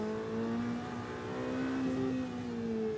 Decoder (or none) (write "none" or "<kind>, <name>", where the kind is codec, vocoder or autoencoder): none